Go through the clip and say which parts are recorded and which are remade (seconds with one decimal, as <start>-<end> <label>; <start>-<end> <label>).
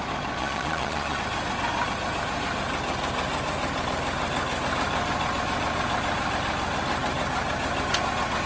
0.0-0.4 recorded; 0.4-1.2 remade; 1.2-8.5 recorded